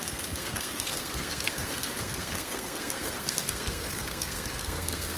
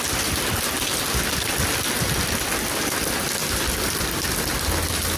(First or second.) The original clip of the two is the second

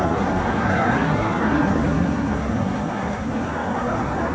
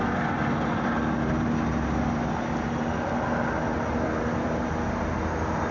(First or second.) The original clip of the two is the second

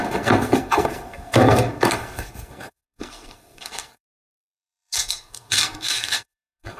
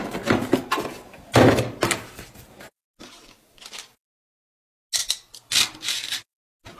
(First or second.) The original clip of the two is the second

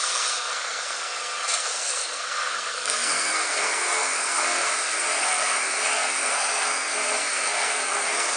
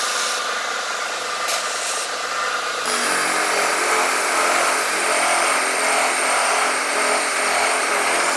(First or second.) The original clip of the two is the second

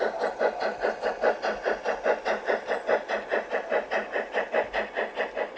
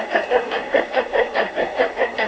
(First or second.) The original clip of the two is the first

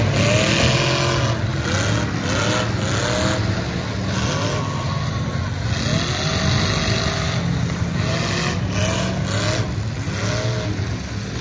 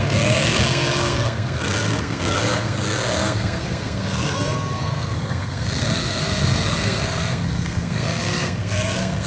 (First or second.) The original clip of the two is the first